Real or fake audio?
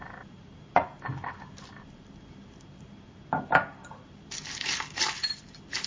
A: fake